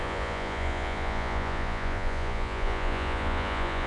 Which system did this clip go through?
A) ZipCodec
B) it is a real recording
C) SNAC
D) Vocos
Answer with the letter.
D